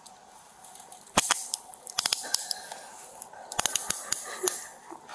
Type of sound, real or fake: real